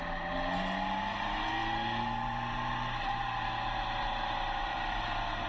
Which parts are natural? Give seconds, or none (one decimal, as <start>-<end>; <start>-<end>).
0.0-5.5